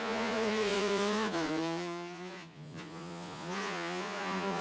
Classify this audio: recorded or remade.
remade